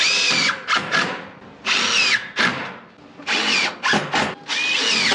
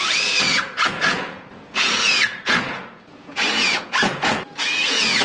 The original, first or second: first